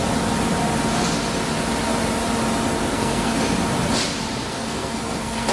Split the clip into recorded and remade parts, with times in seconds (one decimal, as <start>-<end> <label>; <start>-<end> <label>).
0.0-2.9 recorded; 2.9-3.3 remade; 3.3-4.5 recorded; 4.5-5.5 remade